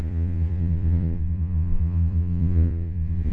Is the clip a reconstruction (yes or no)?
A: yes